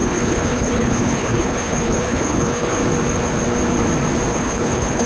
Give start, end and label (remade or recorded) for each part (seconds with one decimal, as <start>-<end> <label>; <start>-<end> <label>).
0.0-2.8 remade; 2.8-4.3 recorded; 4.3-5.1 remade